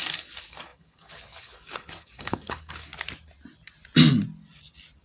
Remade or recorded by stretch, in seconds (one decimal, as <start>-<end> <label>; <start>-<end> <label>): 0.0-2.9 remade; 2.9-5.0 recorded